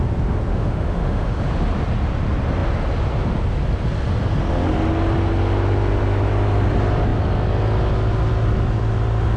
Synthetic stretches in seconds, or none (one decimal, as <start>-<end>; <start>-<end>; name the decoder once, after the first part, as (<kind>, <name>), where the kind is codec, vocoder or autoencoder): 0.5-1.4 (autoencoder, DAC-VAE)